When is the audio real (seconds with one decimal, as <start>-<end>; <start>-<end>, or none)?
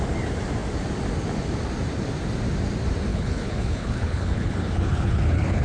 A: 0.0-3.1